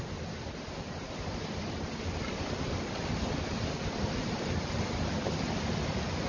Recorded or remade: recorded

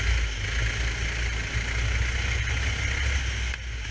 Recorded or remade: recorded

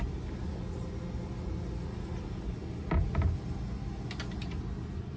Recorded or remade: recorded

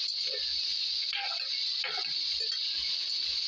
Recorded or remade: recorded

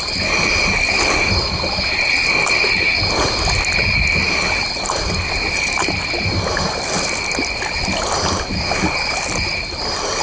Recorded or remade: recorded